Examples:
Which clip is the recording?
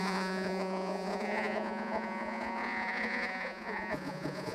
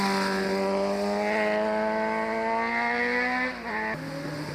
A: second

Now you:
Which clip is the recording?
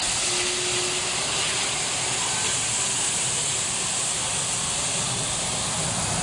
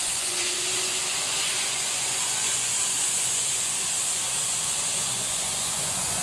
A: first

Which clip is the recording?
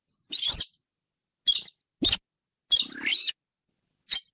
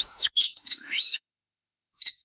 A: first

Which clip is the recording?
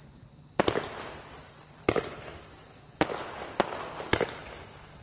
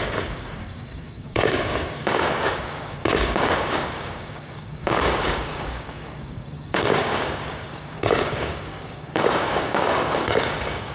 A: first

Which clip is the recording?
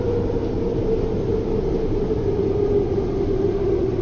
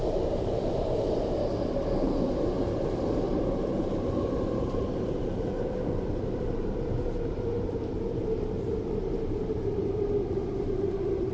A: first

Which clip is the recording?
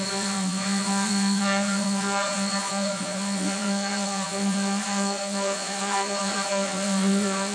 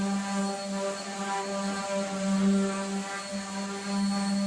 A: second